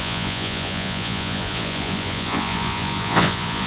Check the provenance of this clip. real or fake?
fake